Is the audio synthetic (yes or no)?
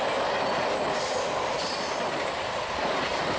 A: no